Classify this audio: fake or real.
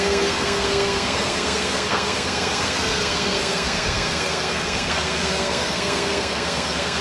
fake